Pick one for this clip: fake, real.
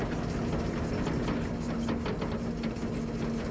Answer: real